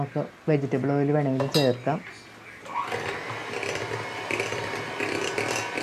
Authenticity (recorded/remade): recorded